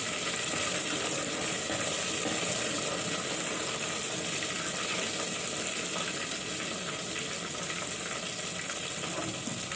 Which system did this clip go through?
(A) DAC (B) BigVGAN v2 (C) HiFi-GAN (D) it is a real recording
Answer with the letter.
D